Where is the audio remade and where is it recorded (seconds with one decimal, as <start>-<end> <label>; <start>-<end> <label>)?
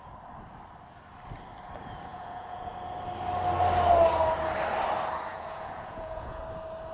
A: 0.0-2.1 recorded; 2.1-2.7 remade; 2.7-5.3 recorded; 5.3-6.4 remade; 6.4-6.9 recorded